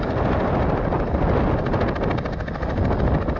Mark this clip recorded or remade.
recorded